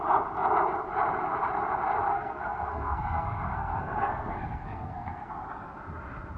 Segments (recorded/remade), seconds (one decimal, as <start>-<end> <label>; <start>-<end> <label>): 0.0-2.1 recorded; 2.1-5.3 remade; 5.3-6.4 recorded